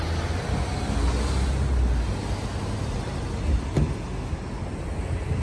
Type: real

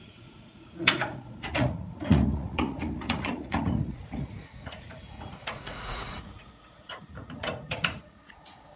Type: fake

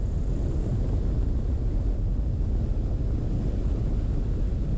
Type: real